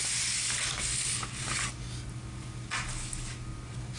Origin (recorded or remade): recorded